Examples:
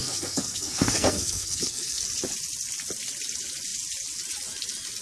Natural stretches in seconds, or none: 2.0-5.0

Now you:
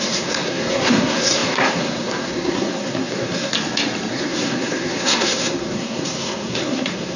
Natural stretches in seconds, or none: 3.5-4.1

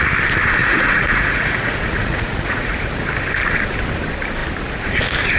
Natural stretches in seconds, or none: 0.0-0.6; 3.1-5.4

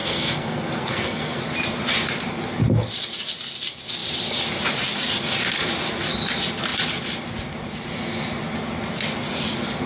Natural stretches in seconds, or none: 1.4-9.9